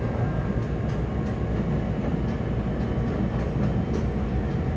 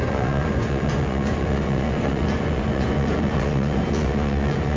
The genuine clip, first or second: first